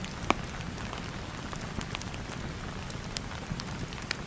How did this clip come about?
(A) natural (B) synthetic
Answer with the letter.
A